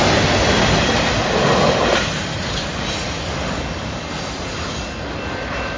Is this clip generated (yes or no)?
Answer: no